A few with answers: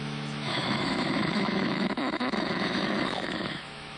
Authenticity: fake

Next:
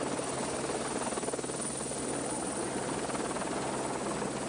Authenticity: real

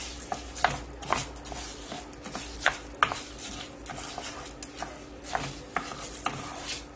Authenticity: real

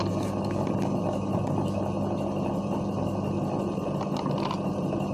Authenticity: real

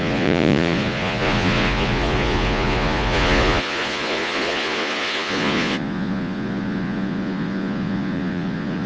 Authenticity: fake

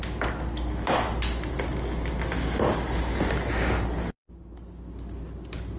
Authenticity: real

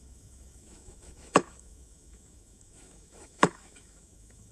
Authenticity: fake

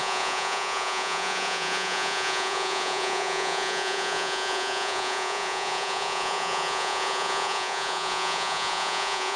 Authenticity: fake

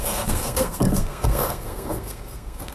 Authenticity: fake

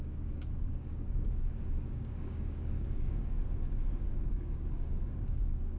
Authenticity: fake